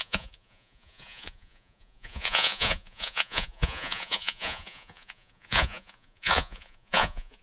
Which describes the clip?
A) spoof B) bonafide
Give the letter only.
A